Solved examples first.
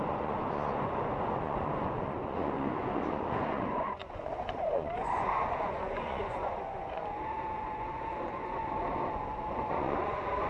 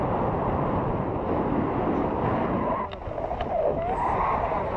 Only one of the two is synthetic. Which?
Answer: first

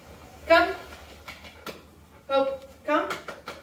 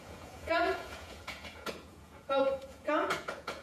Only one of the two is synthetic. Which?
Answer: second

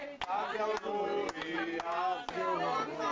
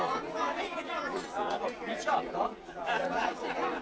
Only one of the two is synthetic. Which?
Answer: second